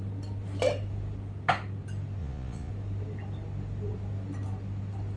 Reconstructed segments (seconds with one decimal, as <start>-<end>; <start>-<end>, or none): 2.2-2.7